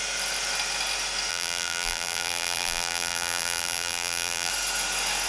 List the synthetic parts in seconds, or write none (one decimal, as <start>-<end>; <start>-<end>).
1.3-4.5